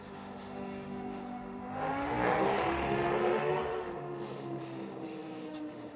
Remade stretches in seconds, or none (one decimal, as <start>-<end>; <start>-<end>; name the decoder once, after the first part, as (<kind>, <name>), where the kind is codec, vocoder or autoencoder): 0.0-6.0 (autoencoder, DAC-VAE)